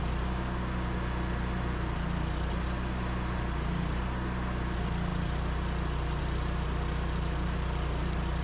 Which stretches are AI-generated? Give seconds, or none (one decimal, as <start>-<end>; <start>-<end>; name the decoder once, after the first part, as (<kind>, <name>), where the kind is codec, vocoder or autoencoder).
none